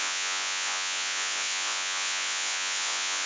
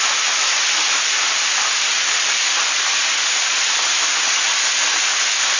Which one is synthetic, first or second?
first